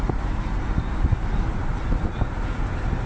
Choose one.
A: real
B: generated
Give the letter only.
A